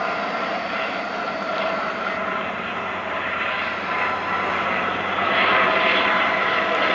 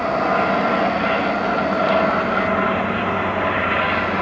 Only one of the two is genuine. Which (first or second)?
second